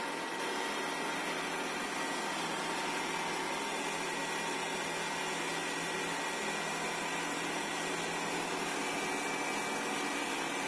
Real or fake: real